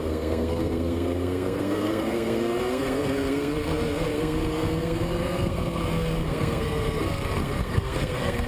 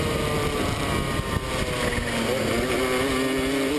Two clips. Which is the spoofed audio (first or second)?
first